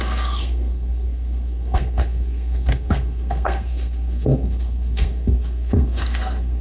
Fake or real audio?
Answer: fake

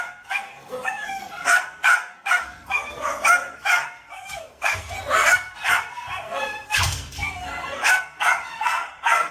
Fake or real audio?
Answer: fake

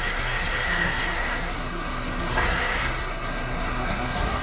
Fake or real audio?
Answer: fake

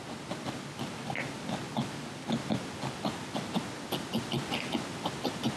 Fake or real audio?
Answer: real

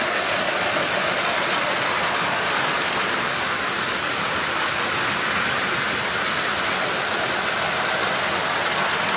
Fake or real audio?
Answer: real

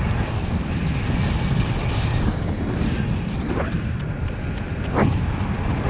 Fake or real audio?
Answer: real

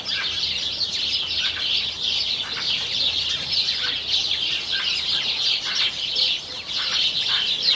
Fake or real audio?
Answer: real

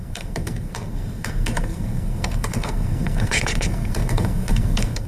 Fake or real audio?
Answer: fake